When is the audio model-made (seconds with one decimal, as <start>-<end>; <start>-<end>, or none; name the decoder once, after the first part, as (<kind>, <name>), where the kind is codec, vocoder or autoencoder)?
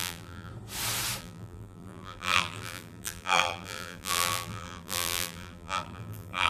0.0-0.5 (vocoder, BigVGAN v2); 1.2-6.5